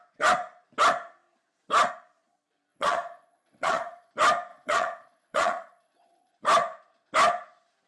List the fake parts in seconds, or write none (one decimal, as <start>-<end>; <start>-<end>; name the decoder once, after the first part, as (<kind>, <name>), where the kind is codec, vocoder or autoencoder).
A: 2.7-4.1 (vocoder, Vocos); 4.5-6.3